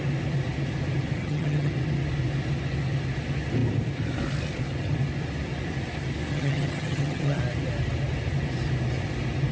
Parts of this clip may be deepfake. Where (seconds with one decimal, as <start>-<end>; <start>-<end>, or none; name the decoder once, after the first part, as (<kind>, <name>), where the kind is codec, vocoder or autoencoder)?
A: 1.2-1.7 (vocoder, HiFi-GAN); 6.3-7.4

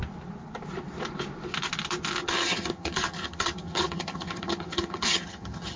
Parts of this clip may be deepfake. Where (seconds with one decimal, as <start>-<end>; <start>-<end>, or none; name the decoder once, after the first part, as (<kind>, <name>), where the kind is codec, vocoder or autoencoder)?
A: 2.2-5.8 (vocoder, HiFi-GAN)

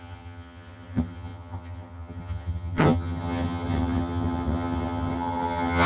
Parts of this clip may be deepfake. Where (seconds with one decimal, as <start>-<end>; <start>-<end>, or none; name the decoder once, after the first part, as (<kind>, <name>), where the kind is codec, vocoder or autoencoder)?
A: 0.0-5.9 (vocoder, HiFi-GAN)

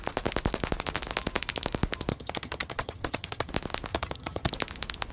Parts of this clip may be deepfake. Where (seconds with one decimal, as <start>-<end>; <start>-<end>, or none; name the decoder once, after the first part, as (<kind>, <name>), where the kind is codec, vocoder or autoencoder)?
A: 2.1-3.5 (vocoder, HiFi-GAN); 3.9-4.5